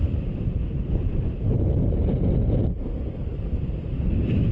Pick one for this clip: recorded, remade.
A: recorded